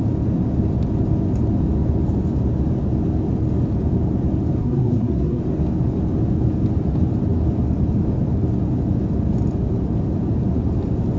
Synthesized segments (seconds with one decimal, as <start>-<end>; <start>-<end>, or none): 4.6-5.4